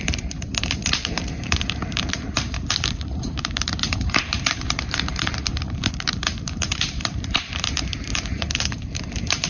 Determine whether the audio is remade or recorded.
remade